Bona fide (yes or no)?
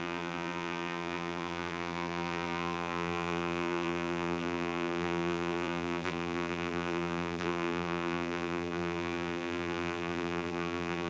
no